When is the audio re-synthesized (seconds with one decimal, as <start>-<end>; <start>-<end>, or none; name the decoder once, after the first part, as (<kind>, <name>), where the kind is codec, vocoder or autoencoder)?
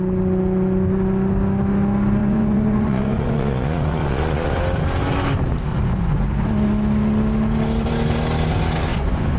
2.2-4.6 (vocoder, Vocos); 5.7-6.2; 8.9-9.4